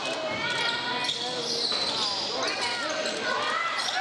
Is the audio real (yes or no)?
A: yes